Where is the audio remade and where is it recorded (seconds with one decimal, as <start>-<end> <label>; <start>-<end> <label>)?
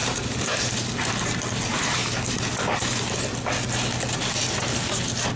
0.0-5.4 recorded